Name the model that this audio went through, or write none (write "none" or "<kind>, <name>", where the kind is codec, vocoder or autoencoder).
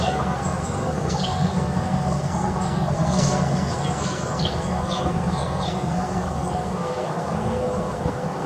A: codec, SNAC